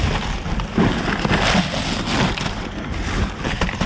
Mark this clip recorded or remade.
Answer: recorded